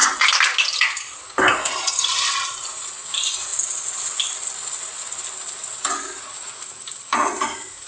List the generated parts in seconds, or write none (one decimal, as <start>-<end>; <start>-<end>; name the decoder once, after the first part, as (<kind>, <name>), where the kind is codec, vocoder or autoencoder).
2.0-3.5 (vocoder, BigVGAN v2); 6.0-7.9